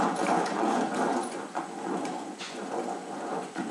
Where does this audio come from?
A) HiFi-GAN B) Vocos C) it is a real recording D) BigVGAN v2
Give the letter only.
B